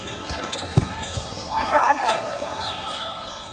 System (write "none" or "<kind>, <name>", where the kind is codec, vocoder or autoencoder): codec, SNAC